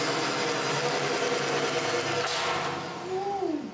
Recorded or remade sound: recorded